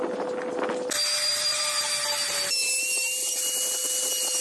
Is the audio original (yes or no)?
yes